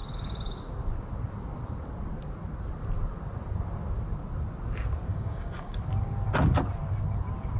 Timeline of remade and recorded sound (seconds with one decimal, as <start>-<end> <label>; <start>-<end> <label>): 0.0-5.1 recorded; 5.1-5.8 remade; 5.8-7.6 recorded